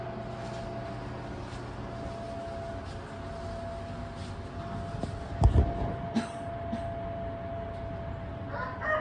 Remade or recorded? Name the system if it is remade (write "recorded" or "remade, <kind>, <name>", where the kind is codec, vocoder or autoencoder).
recorded